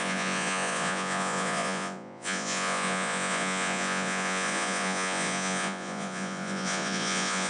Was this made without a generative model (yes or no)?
no